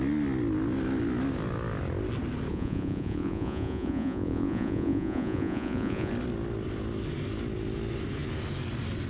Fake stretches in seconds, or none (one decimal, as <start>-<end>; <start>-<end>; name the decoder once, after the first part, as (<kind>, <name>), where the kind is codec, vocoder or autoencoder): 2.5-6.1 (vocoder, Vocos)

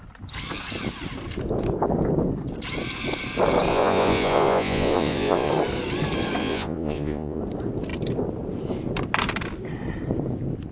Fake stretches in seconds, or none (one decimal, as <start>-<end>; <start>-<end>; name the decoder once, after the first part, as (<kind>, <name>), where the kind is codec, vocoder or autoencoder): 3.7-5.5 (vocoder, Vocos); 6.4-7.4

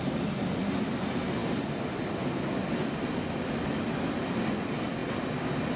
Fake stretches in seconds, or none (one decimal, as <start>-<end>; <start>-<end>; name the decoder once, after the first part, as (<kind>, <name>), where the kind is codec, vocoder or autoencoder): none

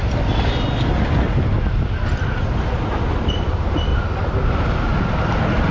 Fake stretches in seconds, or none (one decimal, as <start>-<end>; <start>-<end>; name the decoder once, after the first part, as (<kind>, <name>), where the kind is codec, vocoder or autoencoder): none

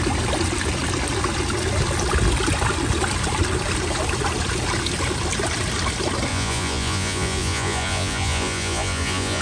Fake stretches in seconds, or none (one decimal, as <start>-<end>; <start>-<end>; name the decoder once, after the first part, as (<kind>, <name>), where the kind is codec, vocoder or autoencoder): 6.3-9.4 (vocoder, Vocos)

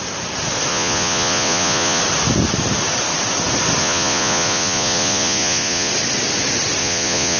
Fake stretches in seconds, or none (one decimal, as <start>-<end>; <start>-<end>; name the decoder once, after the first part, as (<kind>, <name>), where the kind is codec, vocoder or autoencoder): 0.7-2.0 (vocoder, Vocos); 3.8-5.9; 6.8-7.4

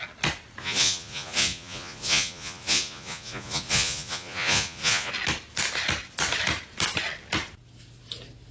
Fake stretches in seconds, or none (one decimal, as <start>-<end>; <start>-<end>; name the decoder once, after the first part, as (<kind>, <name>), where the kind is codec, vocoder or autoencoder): 0.6-5.1 (vocoder, Vocos)

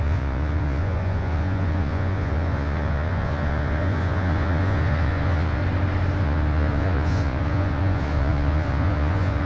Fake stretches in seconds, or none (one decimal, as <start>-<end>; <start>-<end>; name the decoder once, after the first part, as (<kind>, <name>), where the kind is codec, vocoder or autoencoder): 0.0-5.6 (vocoder, Vocos); 6.2-9.4